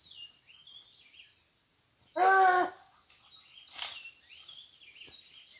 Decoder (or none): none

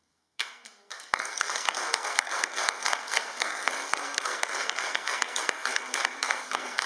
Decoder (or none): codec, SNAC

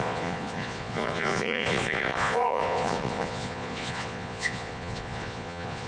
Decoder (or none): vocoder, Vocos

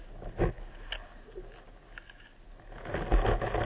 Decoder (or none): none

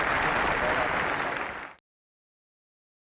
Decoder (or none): none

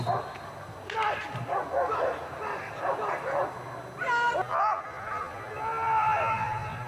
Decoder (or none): none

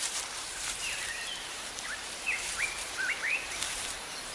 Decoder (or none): vocoder, BigVGAN v2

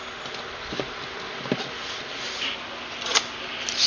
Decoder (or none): none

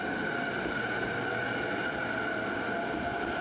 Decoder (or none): none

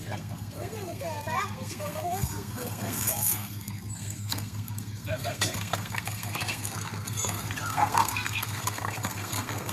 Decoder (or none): codec, SNAC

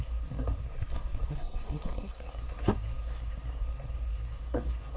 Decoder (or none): codec, SNAC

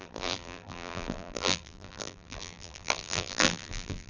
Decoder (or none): vocoder, BigVGAN v2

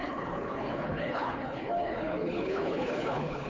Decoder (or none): codec, HILCodec